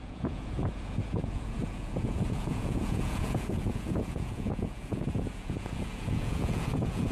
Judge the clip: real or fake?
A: fake